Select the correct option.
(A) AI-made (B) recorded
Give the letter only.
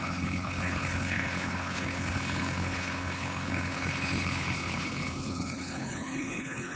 A